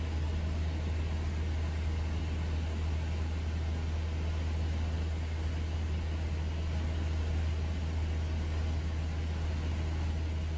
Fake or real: real